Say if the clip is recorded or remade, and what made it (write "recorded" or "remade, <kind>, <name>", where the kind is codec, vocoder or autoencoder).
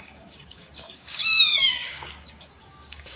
remade, codec, DAC